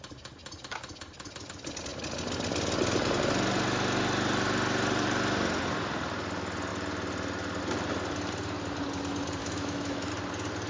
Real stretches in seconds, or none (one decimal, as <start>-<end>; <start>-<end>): 0.0-9.4; 10.1-10.7